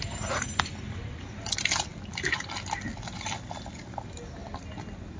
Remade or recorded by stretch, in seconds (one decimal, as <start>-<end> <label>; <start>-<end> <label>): 0.0-5.2 recorded